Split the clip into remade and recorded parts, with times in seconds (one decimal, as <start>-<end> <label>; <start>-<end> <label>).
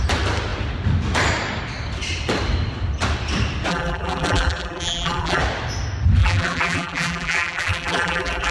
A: 0.0-3.7 recorded; 3.7-5.4 remade; 5.4-6.2 recorded; 6.2-8.5 remade